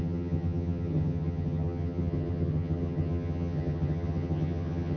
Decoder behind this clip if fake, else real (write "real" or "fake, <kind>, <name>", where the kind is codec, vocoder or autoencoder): fake, vocoder, HiFi-GAN